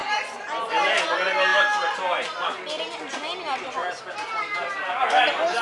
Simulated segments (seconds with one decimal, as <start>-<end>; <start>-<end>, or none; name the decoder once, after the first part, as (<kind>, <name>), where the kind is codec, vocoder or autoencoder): 0.0-0.5 (vocoder, BigVGAN v2)